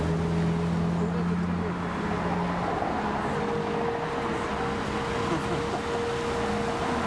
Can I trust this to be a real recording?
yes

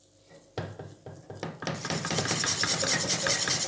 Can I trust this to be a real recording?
yes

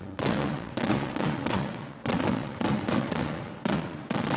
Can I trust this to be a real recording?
no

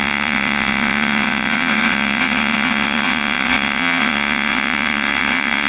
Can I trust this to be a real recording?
no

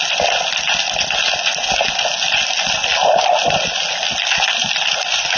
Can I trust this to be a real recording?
yes